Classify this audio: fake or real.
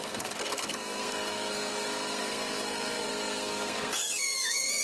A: fake